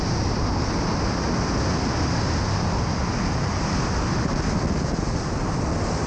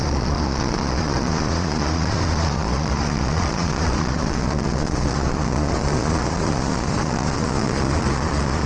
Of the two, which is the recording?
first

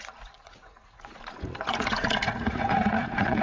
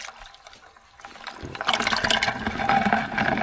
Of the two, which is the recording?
second